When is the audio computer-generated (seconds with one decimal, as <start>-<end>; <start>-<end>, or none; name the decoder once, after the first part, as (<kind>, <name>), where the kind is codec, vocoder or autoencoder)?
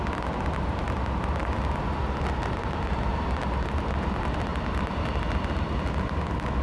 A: none